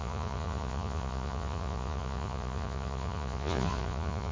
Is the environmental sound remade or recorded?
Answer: remade